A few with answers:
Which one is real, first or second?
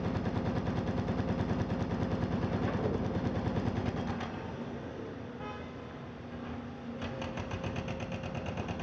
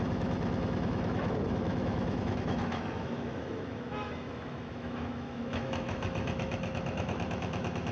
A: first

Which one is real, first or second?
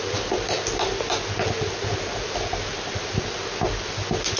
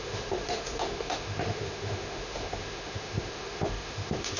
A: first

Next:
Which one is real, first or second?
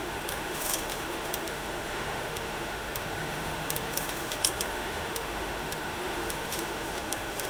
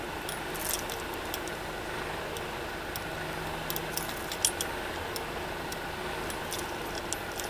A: second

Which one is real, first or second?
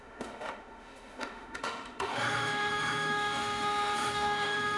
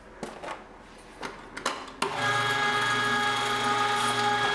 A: second